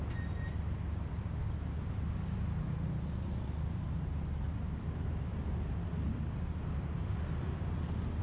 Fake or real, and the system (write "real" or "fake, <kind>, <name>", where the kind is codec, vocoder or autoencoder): real